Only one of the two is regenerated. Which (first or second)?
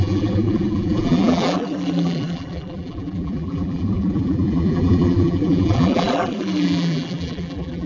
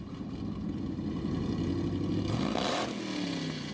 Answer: first